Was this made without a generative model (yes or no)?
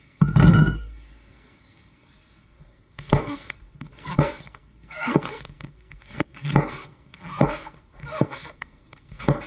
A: no